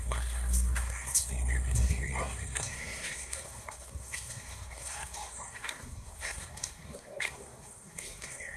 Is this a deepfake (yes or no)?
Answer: yes